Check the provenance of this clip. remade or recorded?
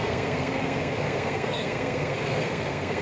remade